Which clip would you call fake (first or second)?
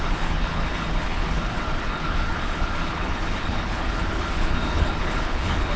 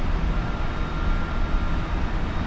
first